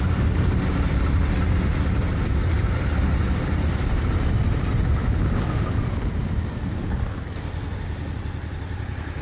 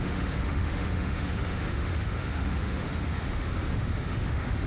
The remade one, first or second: second